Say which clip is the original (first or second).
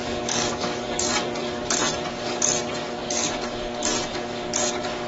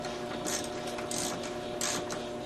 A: second